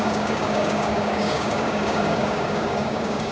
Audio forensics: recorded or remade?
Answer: remade